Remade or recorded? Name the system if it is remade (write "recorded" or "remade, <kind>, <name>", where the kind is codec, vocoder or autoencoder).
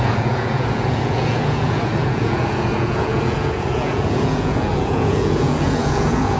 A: remade, vocoder, Vocos